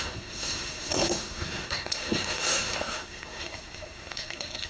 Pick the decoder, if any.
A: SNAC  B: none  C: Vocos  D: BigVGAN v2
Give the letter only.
A